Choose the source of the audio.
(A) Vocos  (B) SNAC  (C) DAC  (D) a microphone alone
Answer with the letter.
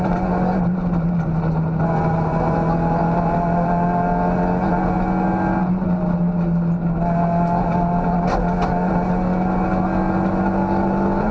D